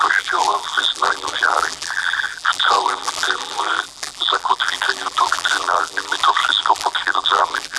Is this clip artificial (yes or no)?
yes